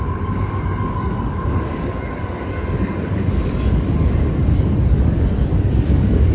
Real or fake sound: fake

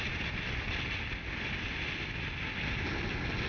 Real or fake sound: real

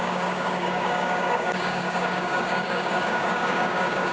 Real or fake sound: fake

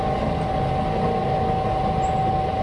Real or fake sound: real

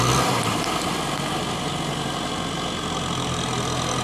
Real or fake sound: real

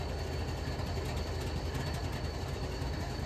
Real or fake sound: real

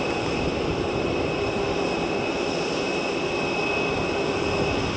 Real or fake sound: real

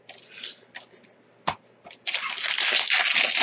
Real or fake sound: real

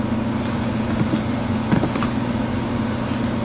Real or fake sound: real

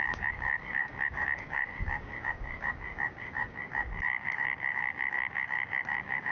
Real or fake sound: fake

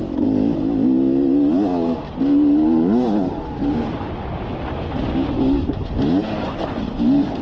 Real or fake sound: real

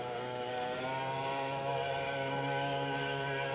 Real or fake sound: fake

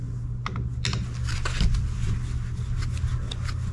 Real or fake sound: real